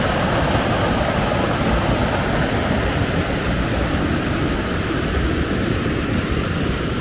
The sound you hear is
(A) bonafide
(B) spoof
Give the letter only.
A